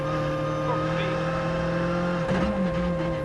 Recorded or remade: recorded